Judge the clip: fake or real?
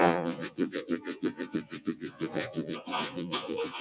fake